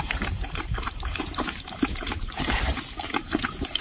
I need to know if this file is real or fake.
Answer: fake